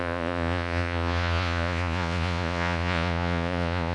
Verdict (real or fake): fake